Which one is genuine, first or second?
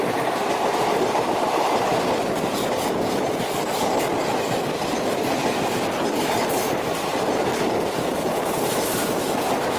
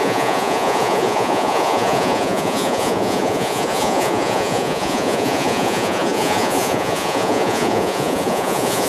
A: first